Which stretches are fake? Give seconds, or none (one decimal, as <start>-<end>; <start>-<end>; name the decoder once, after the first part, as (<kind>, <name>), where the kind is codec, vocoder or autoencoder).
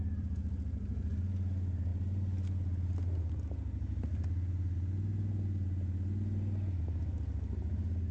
none